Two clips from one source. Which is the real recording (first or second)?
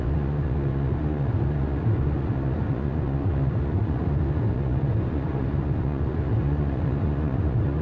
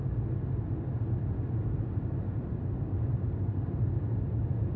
second